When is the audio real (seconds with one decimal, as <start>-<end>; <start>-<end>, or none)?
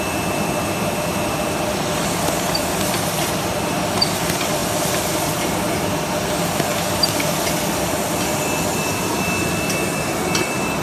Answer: 0.0-10.8